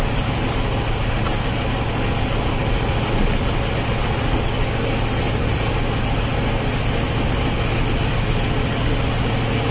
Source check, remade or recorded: recorded